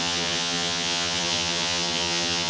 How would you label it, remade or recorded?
remade